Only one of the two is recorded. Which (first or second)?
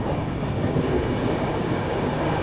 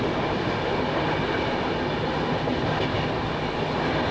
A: second